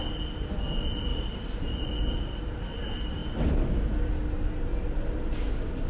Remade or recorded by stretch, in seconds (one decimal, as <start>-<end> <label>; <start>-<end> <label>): 0.0-1.1 recorded; 1.1-1.8 remade; 1.8-5.9 recorded